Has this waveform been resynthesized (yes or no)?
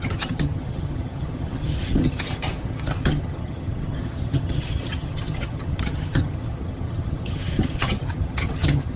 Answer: yes